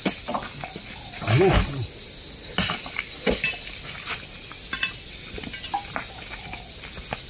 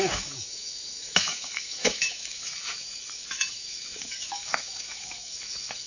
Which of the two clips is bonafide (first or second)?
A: first